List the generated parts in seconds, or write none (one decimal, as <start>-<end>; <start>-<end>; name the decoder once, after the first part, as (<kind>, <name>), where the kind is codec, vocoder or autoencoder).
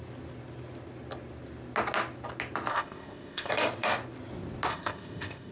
2.7-3.5 (codec, ZipCodec); 4.7-5.5